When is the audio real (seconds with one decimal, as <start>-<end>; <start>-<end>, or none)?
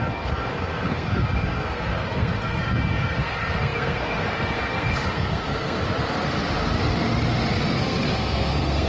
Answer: 5.8-7.8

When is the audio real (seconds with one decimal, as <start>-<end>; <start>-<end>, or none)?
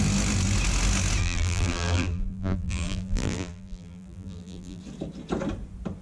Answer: 0.0-1.2; 4.8-6.0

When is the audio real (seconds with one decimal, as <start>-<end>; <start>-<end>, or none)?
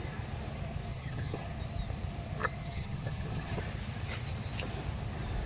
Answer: 0.0-0.9; 1.5-2.6; 3.6-5.5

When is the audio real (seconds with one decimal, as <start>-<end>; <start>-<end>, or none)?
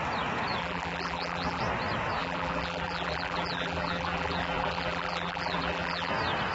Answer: 0.0-0.6; 1.6-2.2; 6.1-6.5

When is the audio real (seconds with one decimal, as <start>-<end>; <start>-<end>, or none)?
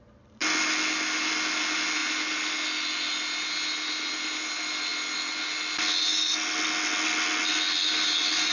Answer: 0.0-8.5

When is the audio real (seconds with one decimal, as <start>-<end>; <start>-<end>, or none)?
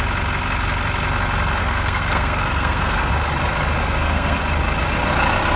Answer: 0.0-1.6; 3.1-3.8; 4.4-5.6